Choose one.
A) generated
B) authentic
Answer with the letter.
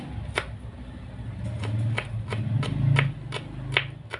B